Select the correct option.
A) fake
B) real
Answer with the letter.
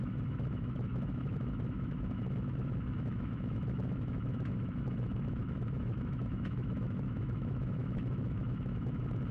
A